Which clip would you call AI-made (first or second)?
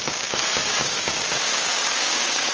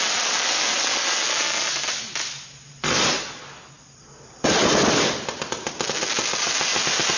first